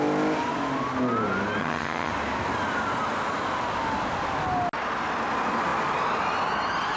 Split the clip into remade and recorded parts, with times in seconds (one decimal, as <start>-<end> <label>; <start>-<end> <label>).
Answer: 0.0-1.6 recorded; 1.6-2.1 remade; 2.1-7.0 recorded